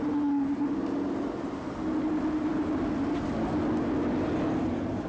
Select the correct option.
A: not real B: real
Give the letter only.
B